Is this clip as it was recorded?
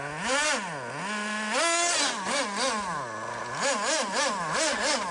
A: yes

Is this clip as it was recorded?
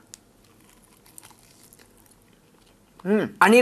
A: yes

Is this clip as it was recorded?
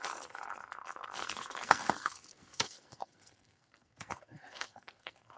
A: no